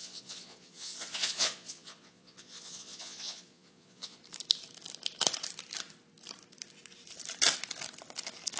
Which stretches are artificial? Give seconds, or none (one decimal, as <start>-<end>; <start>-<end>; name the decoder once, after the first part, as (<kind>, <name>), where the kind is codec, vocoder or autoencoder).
0.0-4.2 (vocoder, Vocos)